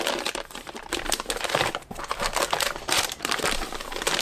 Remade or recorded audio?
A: remade